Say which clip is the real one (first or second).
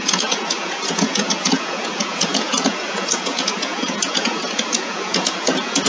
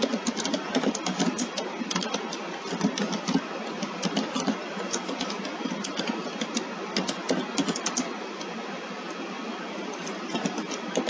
second